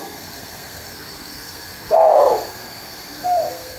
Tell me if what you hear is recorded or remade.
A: remade